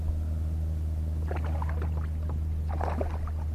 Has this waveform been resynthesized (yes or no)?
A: no